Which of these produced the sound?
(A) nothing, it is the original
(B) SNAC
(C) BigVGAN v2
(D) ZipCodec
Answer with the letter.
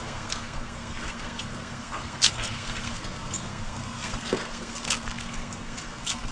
B